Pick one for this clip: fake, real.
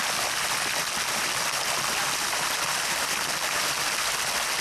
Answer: real